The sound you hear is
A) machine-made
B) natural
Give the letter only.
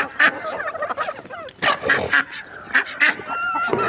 B